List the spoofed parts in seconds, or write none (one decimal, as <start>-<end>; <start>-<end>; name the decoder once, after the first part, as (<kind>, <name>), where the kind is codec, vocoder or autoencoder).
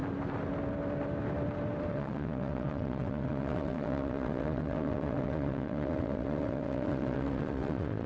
1.9-8.1 (vocoder, WaveNeXt)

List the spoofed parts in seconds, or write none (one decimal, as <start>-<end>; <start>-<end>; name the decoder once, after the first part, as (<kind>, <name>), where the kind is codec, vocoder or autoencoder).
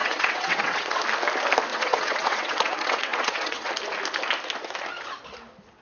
0.0-1.0 (vocoder, WaveNeXt); 1.7-3.7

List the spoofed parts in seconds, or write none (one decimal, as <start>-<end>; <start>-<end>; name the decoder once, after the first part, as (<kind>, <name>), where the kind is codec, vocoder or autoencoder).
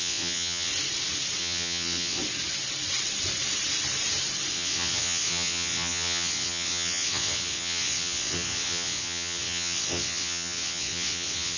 0.0-0.7 (vocoder, WaveNeXt); 1.4-2.2; 4.5-11.6